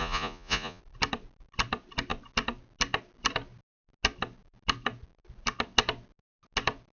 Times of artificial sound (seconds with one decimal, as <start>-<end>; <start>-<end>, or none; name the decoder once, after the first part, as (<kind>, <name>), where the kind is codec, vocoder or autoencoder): 0.0-0.8 (vocoder, Vocos)

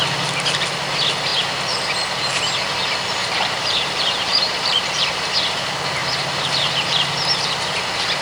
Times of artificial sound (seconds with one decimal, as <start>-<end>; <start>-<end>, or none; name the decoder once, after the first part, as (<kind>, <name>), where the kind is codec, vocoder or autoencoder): 3.2-5.3 (vocoder, BigVGAN v2); 6.0-7.1

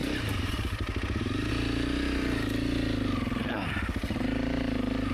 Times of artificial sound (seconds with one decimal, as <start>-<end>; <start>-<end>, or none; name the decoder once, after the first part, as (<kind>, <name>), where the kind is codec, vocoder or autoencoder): 0.0-1.5 (vocoder, BigVGAN v2)

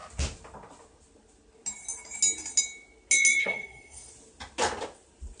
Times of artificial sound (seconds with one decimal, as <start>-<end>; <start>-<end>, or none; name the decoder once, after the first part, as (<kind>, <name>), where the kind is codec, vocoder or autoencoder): 3.4-4.1 (codec, SNAC)

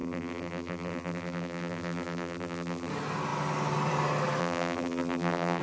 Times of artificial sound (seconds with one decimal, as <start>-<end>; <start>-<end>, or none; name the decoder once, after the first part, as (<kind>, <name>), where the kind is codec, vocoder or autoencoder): 0.0-2.9 (vocoder, BigVGAN v2); 4.4-5.6

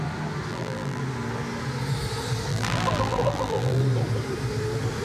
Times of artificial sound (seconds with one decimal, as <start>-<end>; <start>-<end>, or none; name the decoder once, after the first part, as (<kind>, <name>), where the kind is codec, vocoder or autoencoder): 0.5-1.0 (vocoder, BigVGAN v2); 2.5-3.8

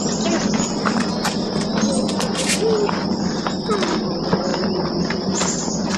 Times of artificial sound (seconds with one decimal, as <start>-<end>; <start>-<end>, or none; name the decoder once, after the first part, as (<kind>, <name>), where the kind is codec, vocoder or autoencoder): none